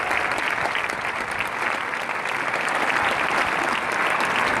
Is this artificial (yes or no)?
no